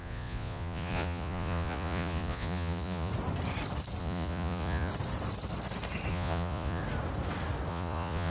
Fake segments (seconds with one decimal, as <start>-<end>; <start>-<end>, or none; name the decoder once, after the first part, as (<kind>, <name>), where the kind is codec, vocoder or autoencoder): 0.0-3.1 (vocoder, Vocos); 4.0-4.9; 6.1-6.8; 7.7-8.3